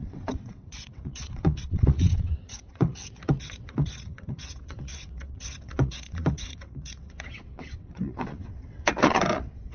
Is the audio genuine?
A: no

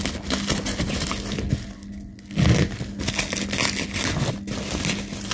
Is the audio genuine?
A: yes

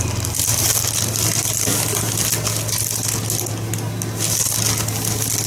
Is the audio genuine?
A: yes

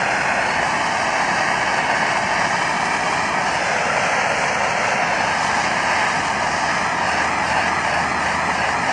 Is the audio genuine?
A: yes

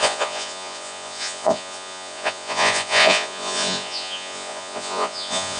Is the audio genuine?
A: no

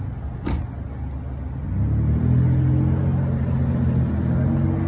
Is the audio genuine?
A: yes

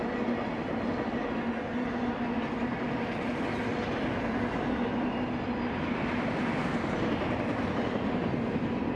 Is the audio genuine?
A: yes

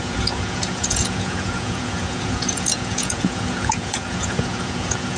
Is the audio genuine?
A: no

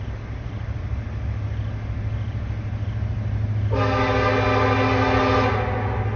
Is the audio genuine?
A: yes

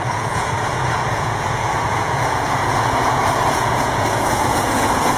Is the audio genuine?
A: no